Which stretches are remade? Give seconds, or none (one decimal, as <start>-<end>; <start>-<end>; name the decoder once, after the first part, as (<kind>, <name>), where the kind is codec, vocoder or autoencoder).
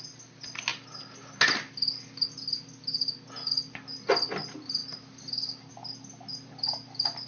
none